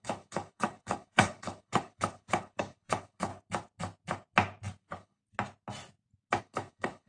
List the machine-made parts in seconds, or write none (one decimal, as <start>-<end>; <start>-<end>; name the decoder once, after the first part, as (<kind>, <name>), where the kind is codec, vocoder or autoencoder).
0.0-3.3 (codec, HILCodec); 4.8-5.2; 6.4-7.1